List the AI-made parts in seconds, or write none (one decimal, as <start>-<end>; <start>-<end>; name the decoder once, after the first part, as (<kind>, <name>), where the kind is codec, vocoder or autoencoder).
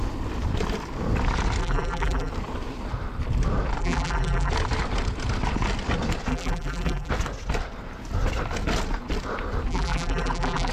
1.6-2.3 (vocoder, BigVGAN v2); 3.8-4.5; 6.3-7.1; 9.7-10.7